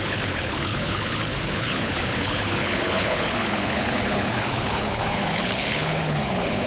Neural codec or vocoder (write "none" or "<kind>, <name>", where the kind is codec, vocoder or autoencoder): codec, HILCodec